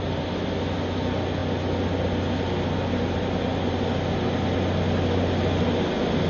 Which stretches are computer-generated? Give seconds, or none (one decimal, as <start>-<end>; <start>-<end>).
none